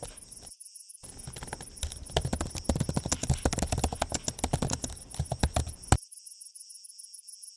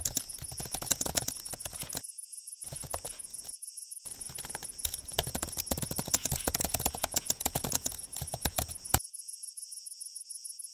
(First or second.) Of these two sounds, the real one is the first